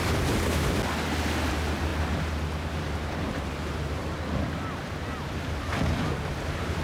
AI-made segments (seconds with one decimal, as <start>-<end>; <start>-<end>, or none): 1.5-4.0; 6.3-6.8